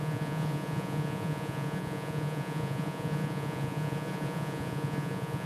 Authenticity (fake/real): fake